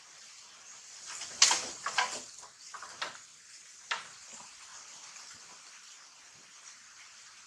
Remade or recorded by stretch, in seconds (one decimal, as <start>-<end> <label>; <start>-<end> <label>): 0.0-7.5 recorded